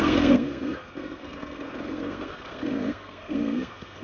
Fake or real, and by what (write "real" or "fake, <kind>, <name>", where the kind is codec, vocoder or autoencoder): fake, codec, SNAC